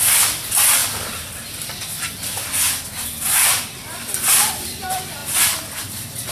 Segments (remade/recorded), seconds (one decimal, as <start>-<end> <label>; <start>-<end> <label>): 0.0-0.8 remade; 0.8-3.6 recorded; 3.6-5.2 remade; 5.2-6.3 recorded